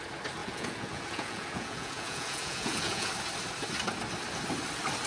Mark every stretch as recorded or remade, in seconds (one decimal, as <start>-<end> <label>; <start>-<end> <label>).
0.0-0.4 recorded; 0.4-3.1 remade; 3.1-5.1 recorded